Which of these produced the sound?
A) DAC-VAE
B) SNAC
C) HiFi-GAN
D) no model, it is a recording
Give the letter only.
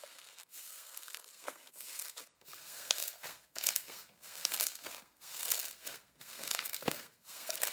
B